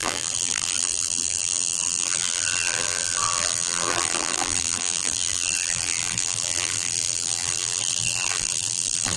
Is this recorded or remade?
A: remade